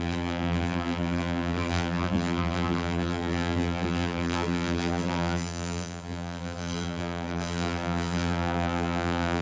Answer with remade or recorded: remade